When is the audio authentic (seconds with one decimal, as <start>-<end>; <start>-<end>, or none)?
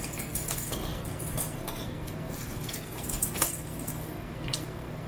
none